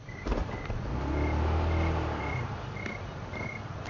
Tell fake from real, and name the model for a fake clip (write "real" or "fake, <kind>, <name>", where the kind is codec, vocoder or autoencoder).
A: real